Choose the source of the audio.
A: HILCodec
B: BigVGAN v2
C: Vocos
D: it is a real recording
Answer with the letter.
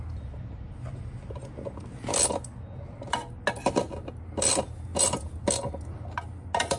D